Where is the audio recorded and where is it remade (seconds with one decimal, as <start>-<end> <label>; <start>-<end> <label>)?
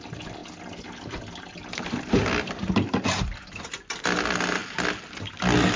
0.0-5.8 recorded